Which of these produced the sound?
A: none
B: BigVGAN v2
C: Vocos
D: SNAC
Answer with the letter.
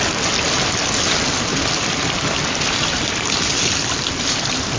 A